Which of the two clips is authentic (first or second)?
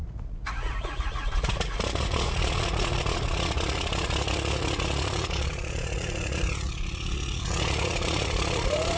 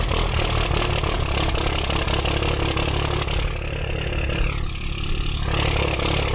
second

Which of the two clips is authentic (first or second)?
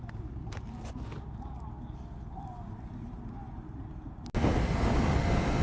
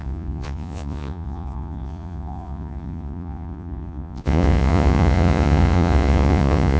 first